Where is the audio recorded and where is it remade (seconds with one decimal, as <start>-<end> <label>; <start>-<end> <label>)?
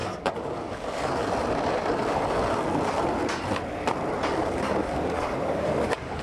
0.0-1.2 remade; 1.2-4.4 recorded; 4.4-6.2 remade